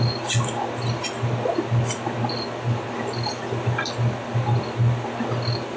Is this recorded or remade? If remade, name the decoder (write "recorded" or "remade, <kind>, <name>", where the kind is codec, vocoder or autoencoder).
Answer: recorded